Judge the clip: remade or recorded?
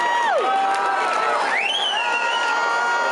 recorded